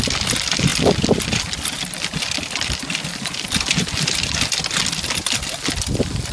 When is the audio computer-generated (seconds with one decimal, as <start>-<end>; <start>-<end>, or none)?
none